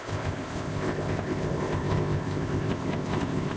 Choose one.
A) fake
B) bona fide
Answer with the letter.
A